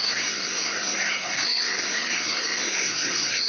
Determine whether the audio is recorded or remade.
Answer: remade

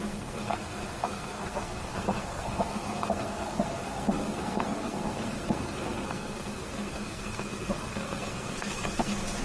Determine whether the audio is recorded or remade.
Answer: remade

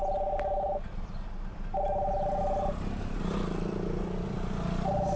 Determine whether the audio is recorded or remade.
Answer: recorded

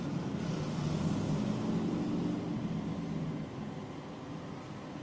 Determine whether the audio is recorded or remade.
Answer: recorded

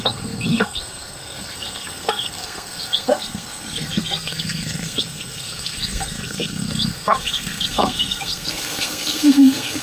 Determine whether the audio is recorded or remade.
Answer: remade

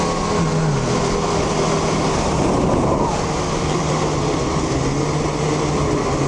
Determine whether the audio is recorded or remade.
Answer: recorded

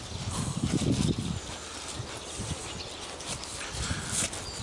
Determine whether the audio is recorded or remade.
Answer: recorded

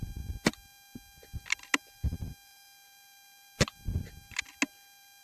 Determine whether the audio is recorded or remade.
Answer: recorded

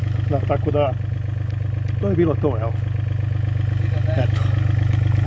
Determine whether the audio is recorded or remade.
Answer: recorded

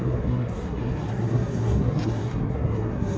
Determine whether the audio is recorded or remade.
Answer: remade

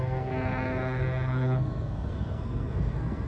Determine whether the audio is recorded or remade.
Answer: remade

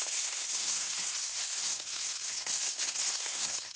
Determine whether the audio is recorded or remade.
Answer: remade